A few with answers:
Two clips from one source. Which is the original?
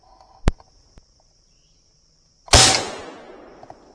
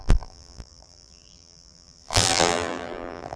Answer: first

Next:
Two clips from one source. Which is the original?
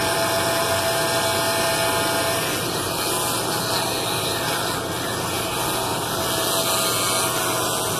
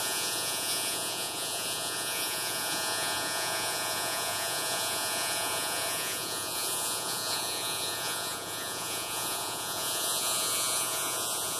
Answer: first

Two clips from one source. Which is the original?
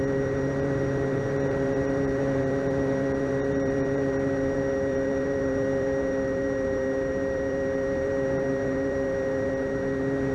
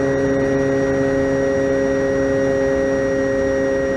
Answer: second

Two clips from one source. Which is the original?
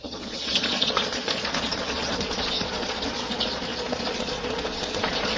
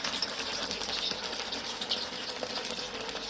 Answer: second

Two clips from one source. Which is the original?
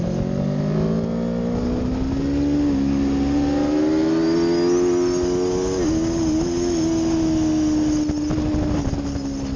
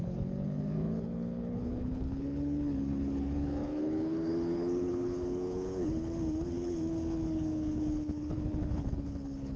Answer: first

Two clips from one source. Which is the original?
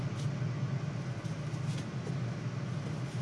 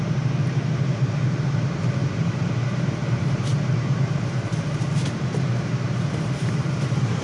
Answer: first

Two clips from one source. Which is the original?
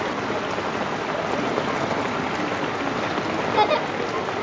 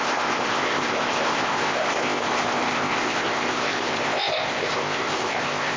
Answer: first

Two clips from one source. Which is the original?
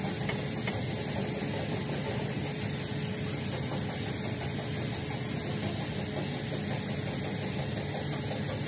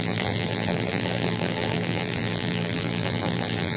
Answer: first